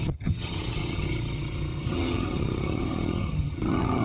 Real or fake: fake